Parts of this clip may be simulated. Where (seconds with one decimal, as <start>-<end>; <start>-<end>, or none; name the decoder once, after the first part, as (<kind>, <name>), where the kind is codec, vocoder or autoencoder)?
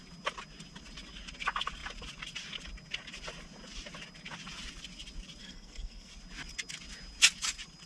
5.4-6.1 (codec, SNAC)